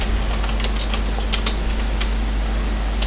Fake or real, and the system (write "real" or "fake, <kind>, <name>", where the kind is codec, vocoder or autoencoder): real